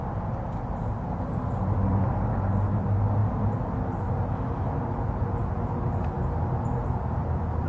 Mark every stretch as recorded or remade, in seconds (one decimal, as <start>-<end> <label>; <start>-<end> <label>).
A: 0.0-7.7 recorded